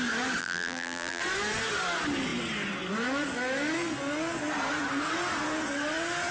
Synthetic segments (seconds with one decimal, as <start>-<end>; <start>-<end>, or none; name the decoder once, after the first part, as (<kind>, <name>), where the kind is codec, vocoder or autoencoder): 0.4-1.2 (vocoder, BigVGAN v2)